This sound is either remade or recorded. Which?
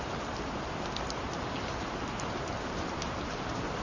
recorded